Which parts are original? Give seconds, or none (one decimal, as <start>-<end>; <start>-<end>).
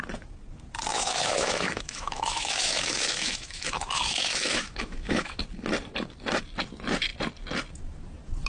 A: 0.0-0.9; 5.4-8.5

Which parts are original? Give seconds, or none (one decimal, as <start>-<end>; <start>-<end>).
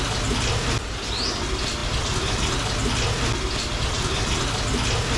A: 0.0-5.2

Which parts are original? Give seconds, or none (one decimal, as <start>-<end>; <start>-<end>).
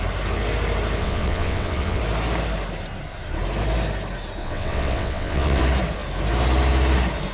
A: 0.0-1.0; 2.0-4.4; 5.6-7.3